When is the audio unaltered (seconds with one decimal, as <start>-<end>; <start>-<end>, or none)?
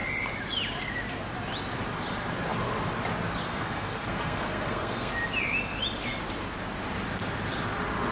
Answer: 0.0-3.5; 5.1-8.1